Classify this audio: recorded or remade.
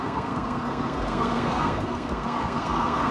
remade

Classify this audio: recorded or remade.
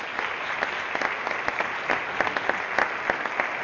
recorded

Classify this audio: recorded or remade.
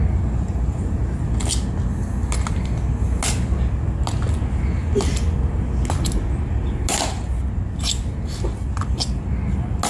recorded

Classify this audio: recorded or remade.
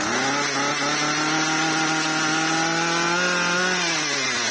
recorded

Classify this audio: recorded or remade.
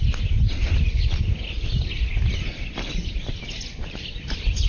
recorded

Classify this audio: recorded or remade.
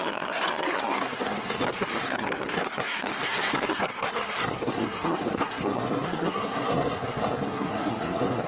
remade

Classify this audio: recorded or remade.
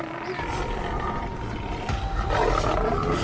recorded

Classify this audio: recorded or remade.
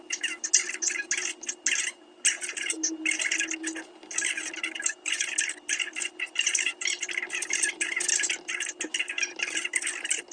recorded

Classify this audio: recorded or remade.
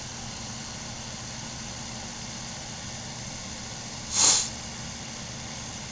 recorded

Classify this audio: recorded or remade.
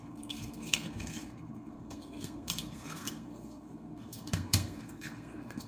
remade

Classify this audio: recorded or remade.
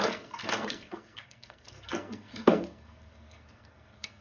remade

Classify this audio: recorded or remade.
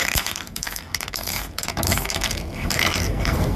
remade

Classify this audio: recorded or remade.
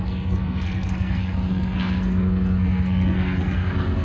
remade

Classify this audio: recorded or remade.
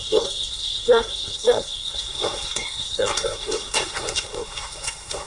remade